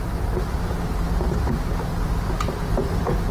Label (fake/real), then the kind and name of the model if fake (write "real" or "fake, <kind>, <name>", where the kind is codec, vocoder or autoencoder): real